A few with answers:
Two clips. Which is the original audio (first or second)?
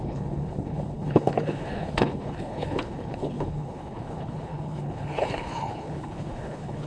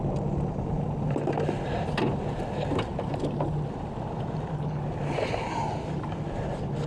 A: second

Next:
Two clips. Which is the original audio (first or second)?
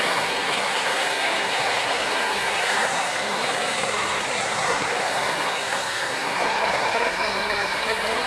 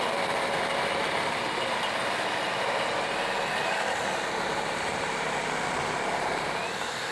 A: second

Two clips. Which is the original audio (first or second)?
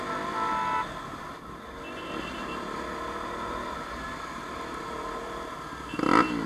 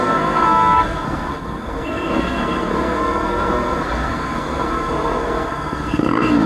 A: first